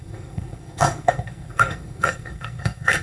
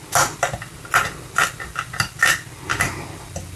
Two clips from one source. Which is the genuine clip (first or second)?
second